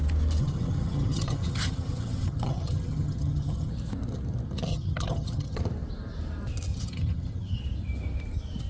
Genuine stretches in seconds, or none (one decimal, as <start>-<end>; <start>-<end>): 0.0-0.4; 3.7-4.7; 5.6-6.7; 7.6-8.7